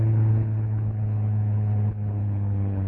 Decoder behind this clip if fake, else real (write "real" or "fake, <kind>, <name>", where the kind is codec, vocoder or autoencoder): fake, codec, HILCodec